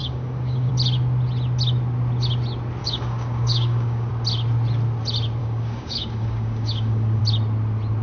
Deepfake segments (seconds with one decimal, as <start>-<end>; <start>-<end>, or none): 0.0-0.7; 2.8-4.1; 5.4-7.2